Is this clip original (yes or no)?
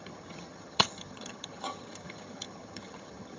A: no